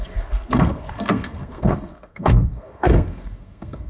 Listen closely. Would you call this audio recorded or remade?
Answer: remade